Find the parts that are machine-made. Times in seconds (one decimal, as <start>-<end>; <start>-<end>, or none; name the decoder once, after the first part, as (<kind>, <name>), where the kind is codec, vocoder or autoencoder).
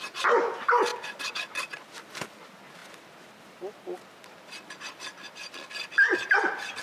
none